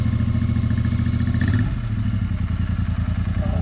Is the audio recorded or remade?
recorded